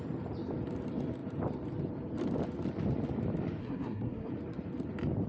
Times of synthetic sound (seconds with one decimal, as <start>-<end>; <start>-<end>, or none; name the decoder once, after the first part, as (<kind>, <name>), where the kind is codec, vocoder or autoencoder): 3.6-4.3 (codec, SNAC)